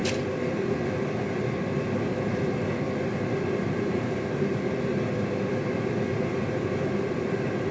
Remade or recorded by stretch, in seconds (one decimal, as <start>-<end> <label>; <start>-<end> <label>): 0.0-3.6 recorded; 3.6-4.5 remade; 4.5-7.7 recorded